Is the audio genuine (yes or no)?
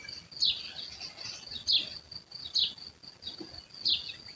yes